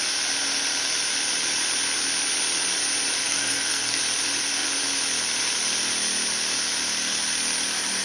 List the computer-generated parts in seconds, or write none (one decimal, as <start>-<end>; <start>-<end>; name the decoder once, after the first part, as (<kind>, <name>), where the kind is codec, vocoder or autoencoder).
3.2-4.0 (codec, SNAC)